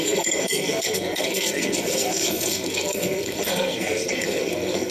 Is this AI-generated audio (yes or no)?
yes